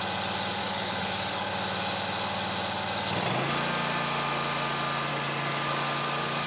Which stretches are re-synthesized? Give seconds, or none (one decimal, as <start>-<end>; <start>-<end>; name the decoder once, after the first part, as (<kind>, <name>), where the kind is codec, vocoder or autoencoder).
0.6-1.5 (codec, DAC); 5.1-6.5